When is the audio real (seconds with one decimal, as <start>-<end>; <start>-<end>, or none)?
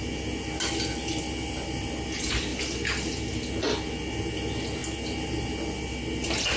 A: 0.0-6.6